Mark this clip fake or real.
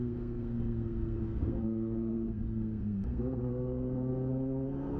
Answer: fake